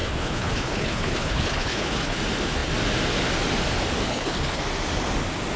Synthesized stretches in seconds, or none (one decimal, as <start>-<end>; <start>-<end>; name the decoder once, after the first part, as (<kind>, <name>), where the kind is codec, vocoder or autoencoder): 0.0-2.2 (codec, HILCodec); 4.1-4.6